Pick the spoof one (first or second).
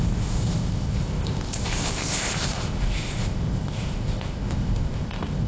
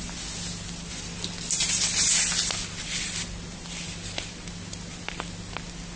first